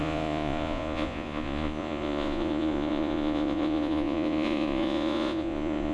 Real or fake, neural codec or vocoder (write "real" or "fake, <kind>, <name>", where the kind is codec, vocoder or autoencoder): fake, vocoder, Vocos